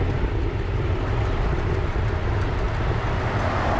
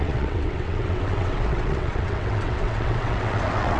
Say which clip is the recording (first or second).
first